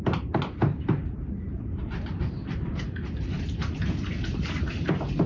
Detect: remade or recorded recorded